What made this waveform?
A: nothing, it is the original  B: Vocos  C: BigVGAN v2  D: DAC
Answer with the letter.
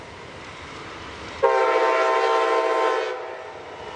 A